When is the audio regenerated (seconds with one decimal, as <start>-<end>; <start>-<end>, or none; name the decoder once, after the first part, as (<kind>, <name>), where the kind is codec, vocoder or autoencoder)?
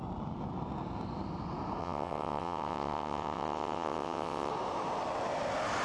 1.8-4.5 (vocoder, WaveNeXt)